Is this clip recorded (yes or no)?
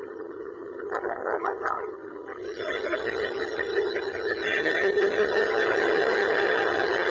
no